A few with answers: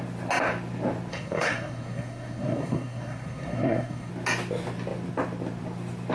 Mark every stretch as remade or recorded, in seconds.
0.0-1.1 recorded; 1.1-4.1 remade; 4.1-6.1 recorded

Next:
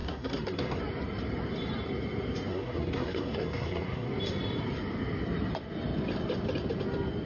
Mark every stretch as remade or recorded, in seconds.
0.0-0.8 remade; 0.8-2.5 recorded; 2.5-4.1 remade; 4.1-7.3 recorded

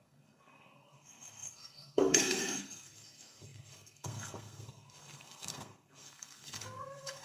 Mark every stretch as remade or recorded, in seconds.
0.0-7.2 remade

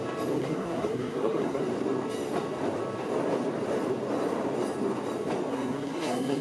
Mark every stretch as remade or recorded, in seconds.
0.0-0.4 recorded; 0.4-1.6 remade; 1.6-5.5 recorded; 5.5-6.4 remade

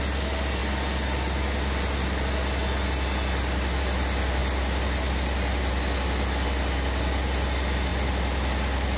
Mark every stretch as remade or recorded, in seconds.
0.0-9.0 recorded

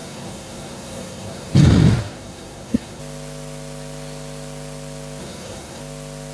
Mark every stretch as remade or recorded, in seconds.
0.0-1.5 remade; 1.5-2.0 recorded; 2.0-3.0 remade; 3.0-5.2 recorded; 5.2-5.8 remade; 5.8-6.3 recorded

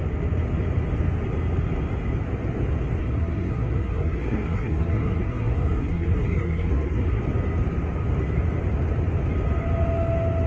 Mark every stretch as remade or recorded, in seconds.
0.0-3.0 recorded; 3.0-7.2 remade; 7.2-10.5 recorded

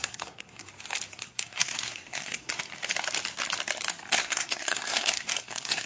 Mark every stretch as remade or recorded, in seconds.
0.0-0.7 remade; 0.7-1.1 recorded; 1.1-2.6 remade; 2.6-4.2 recorded; 4.2-5.9 remade